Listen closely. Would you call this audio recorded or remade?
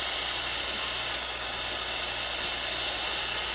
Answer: recorded